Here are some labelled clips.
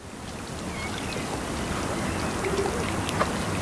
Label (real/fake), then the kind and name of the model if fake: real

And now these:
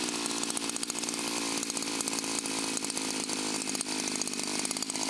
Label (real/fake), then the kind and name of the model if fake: fake, vocoder, BigVGAN v2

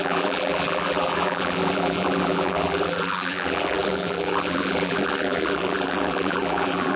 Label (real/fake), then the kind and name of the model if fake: fake, vocoder, BigVGAN v2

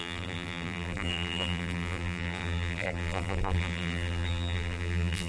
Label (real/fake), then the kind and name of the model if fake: fake, vocoder, BigVGAN v2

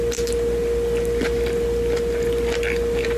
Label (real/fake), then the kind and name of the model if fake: real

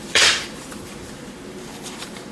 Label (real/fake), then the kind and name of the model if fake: fake, vocoder, BigVGAN v2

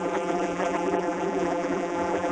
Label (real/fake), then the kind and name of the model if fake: fake, vocoder, BigVGAN v2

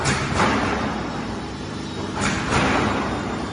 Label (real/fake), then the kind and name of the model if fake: fake, vocoder, BigVGAN v2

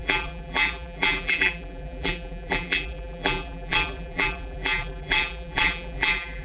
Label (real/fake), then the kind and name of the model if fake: fake, vocoder, BigVGAN v2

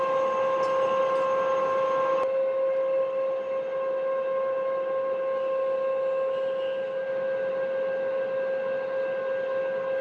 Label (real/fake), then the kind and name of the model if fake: real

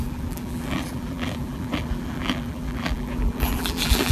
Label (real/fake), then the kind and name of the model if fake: fake, vocoder, BigVGAN v2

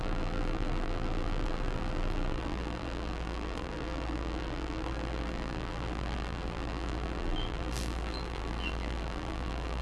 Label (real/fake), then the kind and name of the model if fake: fake, vocoder, BigVGAN v2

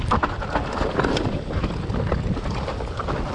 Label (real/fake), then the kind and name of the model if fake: real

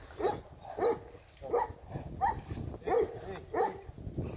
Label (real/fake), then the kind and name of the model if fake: real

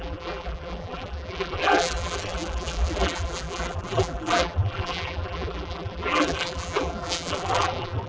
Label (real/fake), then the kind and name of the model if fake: fake, vocoder, BigVGAN v2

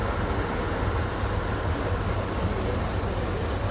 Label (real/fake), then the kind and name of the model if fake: real